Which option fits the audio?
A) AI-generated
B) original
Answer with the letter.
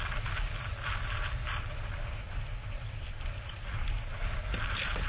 B